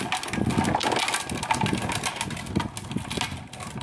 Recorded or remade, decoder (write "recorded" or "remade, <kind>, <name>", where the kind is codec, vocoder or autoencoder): recorded